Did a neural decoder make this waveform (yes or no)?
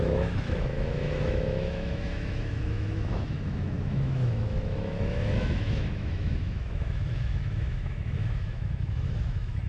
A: yes